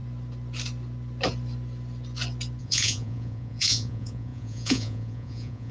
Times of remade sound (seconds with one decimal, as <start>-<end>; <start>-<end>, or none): 2.6-5.7